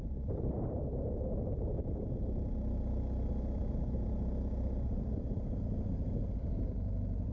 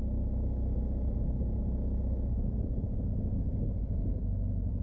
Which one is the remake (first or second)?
first